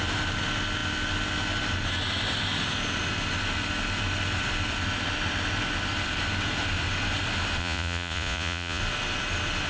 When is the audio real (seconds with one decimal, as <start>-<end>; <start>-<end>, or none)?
0.0-7.6; 8.8-9.7